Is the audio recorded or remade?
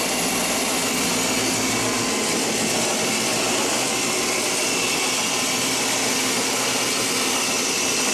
recorded